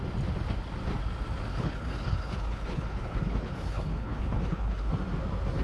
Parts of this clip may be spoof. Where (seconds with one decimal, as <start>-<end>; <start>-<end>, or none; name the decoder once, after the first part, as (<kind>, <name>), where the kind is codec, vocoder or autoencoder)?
1.5-4.9 (codec, HILCodec)